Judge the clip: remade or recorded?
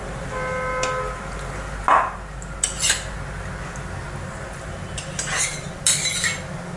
recorded